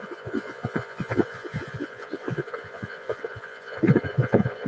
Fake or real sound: fake